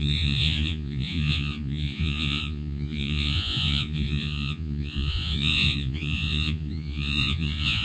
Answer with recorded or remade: remade